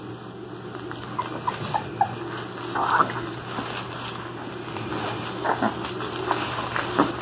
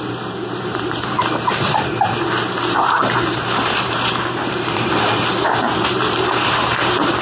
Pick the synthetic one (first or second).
second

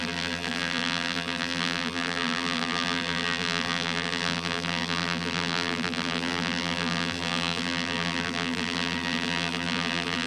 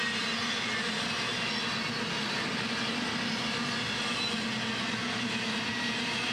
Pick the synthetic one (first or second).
first